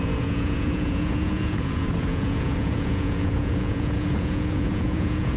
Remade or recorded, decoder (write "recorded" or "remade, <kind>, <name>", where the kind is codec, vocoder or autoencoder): remade, vocoder, Vocos